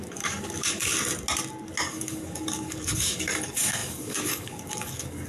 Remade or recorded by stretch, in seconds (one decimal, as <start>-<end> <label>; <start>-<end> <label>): 0.0-0.9 remade; 0.9-1.8 recorded; 1.8-5.3 remade